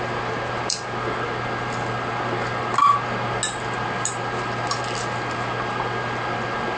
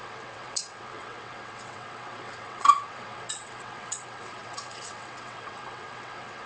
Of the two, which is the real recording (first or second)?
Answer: first